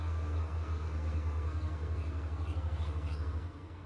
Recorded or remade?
remade